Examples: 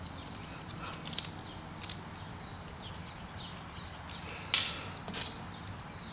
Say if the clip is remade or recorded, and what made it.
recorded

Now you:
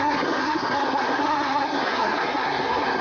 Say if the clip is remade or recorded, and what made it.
remade, codec, SNAC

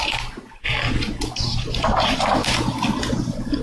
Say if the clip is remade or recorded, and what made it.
recorded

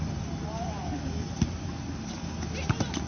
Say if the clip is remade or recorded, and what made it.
recorded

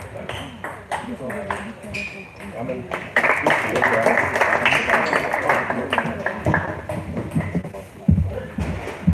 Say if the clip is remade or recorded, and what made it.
recorded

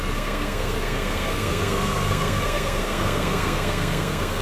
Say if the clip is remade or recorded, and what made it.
remade, codec, SNAC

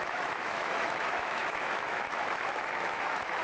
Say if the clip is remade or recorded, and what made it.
remade, autoencoder, DAC-VAE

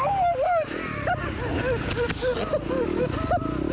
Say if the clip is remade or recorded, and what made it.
recorded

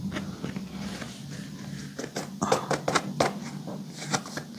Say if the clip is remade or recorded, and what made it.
recorded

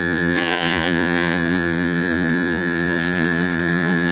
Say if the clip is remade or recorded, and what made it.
remade, vocoder, Vocos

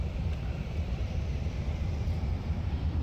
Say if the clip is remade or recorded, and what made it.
remade, vocoder, BigVGAN v2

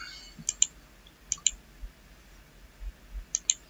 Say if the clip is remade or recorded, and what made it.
recorded